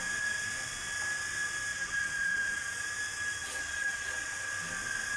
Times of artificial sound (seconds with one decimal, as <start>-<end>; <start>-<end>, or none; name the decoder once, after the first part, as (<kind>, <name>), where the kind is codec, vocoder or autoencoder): 1.7-2.8 (vocoder, Vocos); 3.4-4.3